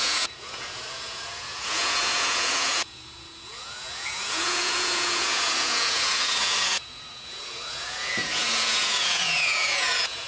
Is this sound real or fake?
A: fake